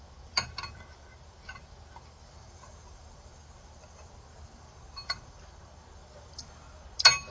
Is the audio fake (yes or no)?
no